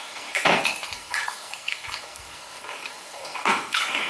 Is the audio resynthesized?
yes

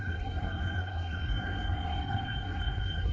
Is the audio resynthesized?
yes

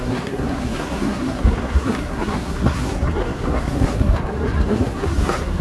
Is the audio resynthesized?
yes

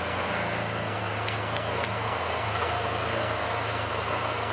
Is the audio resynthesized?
yes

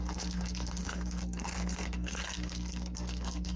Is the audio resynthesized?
yes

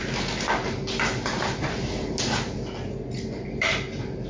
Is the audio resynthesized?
no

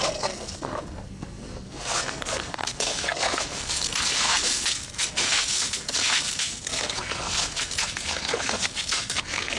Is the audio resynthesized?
yes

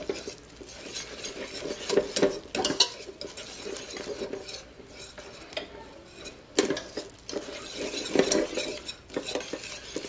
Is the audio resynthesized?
no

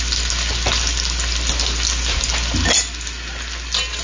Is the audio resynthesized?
no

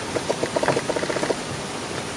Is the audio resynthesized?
no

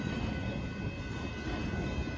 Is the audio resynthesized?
no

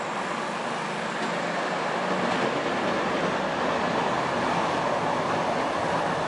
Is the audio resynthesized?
no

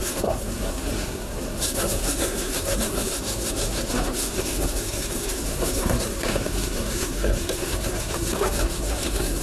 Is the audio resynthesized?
yes